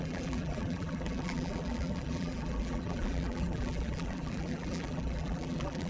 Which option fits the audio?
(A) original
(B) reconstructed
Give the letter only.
B